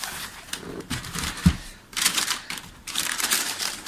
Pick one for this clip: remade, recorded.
remade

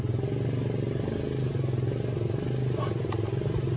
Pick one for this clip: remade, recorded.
recorded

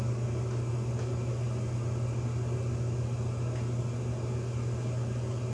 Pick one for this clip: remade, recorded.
recorded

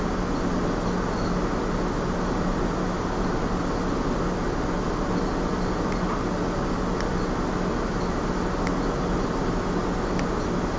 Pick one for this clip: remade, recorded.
recorded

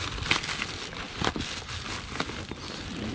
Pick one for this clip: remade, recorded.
recorded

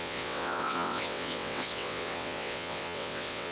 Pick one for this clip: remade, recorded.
remade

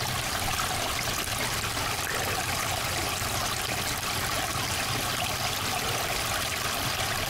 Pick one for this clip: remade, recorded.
recorded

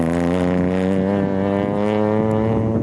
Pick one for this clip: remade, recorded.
recorded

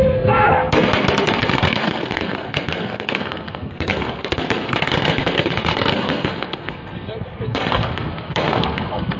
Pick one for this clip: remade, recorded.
remade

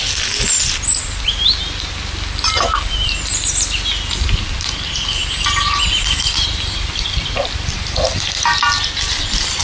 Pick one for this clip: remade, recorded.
recorded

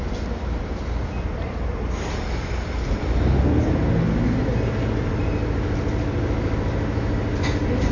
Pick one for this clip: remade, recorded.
recorded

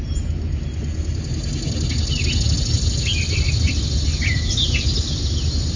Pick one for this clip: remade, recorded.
recorded